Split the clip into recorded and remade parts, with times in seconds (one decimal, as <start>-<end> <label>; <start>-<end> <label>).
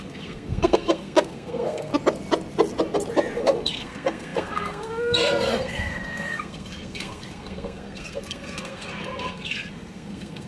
0.0-1.9 remade; 1.9-3.4 recorded; 3.4-10.5 remade